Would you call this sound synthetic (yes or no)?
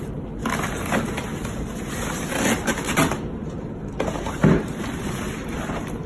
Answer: no